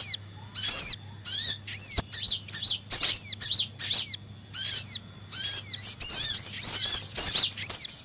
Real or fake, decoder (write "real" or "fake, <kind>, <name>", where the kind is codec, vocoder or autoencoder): real